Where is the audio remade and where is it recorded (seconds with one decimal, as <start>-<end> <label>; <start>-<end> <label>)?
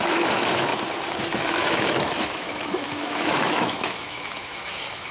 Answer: 0.0-0.7 remade; 0.7-1.6 recorded; 1.6-5.1 remade